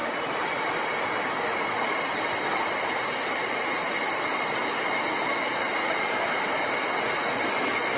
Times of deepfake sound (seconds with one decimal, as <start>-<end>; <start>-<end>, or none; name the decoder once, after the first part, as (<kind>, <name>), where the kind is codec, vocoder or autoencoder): none